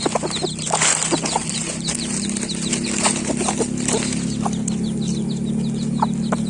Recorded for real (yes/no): yes